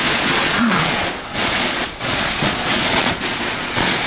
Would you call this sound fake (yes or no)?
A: yes